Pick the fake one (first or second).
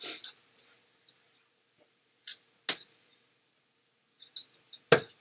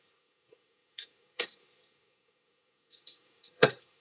second